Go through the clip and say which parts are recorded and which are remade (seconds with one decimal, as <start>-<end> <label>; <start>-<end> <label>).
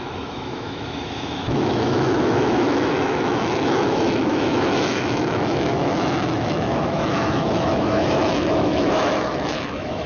0.0-10.1 remade